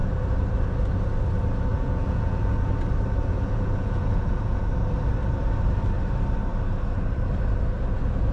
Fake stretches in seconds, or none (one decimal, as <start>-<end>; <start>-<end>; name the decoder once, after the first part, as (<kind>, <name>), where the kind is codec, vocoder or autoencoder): 1.7-2.7 (vocoder, Vocos); 3.2-4.7